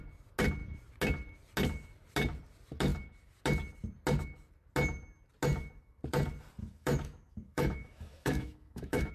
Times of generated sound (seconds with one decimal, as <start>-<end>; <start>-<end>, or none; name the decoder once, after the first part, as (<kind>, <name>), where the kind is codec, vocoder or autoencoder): 6.6-9.1 (autoencoder, DAC-VAE)